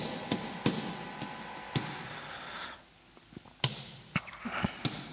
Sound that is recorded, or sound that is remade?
recorded